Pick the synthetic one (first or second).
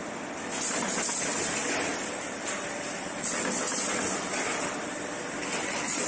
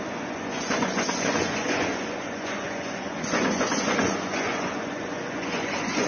second